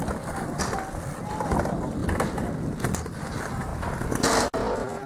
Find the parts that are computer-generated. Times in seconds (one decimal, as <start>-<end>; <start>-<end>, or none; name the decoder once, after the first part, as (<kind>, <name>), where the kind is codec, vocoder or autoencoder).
none